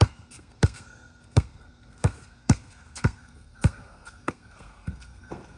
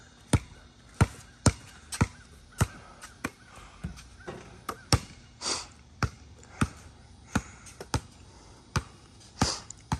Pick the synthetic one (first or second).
first